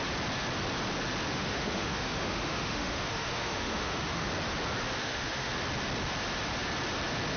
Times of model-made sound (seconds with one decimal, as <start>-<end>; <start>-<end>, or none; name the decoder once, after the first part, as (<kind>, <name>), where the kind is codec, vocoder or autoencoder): 1.3-4.3 (autoencoder, DAC-VAE); 5.0-5.5